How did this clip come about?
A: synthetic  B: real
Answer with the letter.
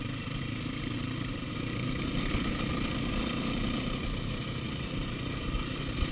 A